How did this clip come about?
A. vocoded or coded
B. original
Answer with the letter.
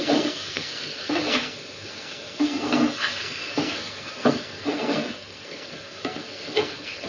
A